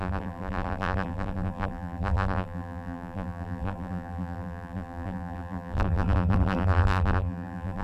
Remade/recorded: remade